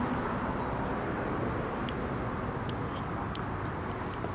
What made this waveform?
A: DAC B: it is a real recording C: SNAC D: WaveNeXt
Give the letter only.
B